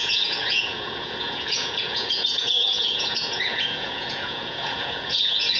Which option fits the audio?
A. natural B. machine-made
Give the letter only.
B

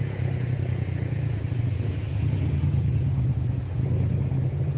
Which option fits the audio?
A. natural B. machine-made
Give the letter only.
B